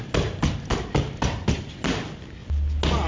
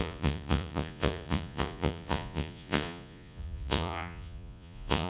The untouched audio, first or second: first